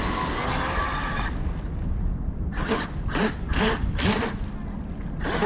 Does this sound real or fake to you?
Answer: real